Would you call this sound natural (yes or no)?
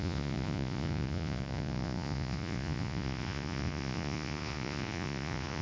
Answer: no